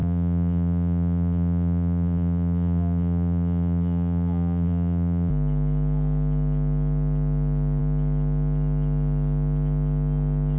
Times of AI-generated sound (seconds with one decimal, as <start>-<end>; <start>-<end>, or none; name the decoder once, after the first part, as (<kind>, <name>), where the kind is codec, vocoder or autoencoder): 0.0-5.3 (vocoder, BigVGAN v2)